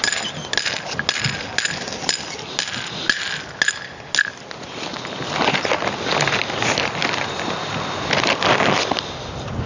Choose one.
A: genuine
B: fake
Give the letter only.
A